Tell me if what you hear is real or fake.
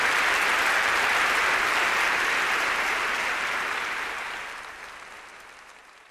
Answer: fake